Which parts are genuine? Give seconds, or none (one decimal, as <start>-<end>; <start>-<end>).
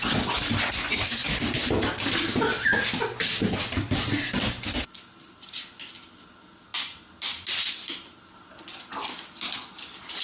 0.0-10.2